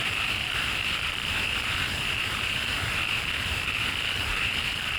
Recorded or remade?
remade